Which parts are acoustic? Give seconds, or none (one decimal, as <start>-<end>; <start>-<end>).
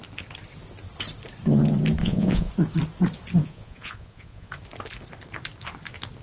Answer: 0.0-2.0; 2.5-3.4; 4.5-6.2